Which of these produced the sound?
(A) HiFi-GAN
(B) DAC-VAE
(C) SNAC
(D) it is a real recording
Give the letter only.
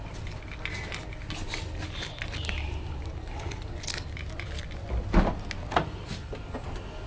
D